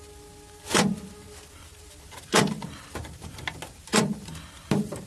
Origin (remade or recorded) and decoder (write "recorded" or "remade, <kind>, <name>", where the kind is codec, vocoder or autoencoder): recorded